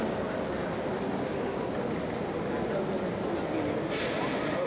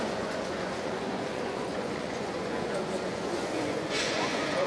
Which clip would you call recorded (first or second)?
first